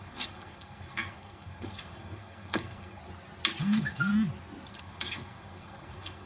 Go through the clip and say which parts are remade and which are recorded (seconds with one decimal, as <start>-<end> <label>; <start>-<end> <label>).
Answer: 0.0-3.0 remade; 3.0-3.6 recorded; 3.6-4.1 remade; 4.1-4.7 recorded; 4.7-6.3 remade